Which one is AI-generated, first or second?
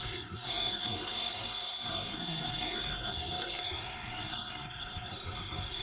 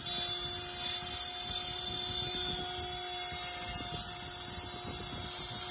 first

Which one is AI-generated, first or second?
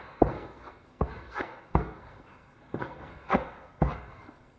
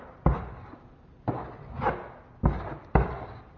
first